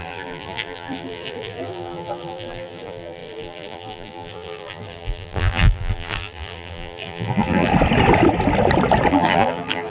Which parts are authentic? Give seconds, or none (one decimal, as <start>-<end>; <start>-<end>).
7.7-9.1